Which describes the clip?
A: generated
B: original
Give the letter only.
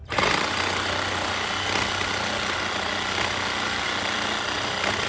B